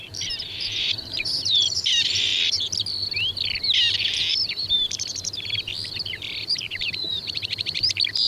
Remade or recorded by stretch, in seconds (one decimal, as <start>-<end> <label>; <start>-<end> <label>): 0.0-2.3 remade; 2.3-4.6 recorded; 4.6-5.7 remade; 5.7-6.4 recorded; 6.4-8.3 remade